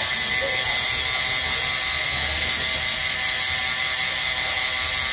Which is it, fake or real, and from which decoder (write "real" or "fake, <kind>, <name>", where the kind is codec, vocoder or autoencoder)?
real